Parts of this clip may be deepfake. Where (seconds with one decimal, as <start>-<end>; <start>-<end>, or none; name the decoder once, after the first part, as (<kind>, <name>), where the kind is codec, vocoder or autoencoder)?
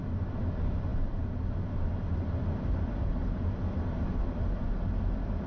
none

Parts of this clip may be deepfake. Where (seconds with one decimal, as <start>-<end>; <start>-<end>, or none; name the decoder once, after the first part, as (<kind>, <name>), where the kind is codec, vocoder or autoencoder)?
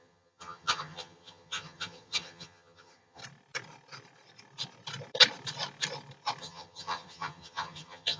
0.0-3.2 (vocoder, HiFi-GAN); 6.4-8.2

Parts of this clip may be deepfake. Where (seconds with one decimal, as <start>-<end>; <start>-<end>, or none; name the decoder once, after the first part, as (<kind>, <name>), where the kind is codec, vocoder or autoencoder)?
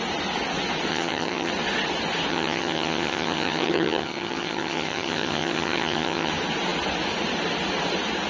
0.9-1.5 (vocoder, HiFi-GAN); 2.3-6.3